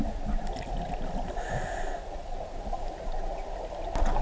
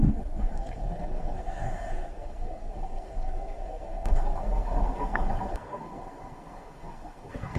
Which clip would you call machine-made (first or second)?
second